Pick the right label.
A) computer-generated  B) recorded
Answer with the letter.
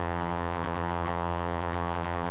A